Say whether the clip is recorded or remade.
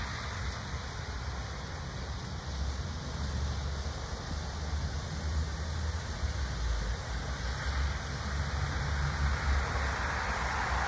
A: recorded